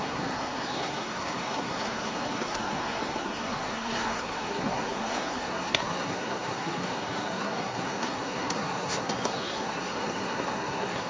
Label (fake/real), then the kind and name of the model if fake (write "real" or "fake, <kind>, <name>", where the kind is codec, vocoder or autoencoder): fake, codec, SNAC